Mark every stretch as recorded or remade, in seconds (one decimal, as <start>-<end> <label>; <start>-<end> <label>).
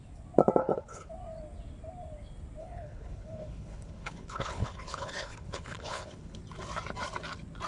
0.0-0.6 recorded; 0.6-1.1 remade; 1.1-2.6 recorded; 2.6-6.4 remade; 6.4-7.7 recorded